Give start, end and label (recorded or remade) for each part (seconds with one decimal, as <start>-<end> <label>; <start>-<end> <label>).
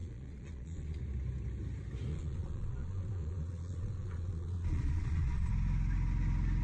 0.0-1.0 remade; 1.0-2.1 recorded; 2.1-5.5 remade; 5.5-6.6 recorded